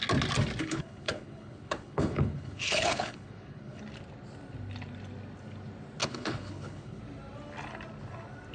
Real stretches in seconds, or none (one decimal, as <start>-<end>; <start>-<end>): 0.0-0.6; 3.8-6.0; 7.0-8.5